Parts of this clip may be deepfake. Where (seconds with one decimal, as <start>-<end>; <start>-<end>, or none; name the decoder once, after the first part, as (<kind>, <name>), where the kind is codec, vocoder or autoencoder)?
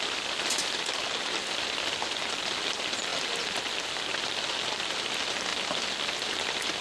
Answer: none